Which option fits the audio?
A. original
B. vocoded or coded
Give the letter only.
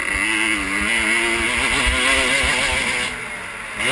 A